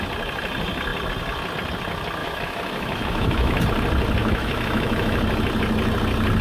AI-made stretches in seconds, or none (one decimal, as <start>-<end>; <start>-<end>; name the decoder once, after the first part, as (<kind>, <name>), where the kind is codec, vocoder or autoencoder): 2.2-3.6 (autoencoder, DAC-VAE); 4.2-5.2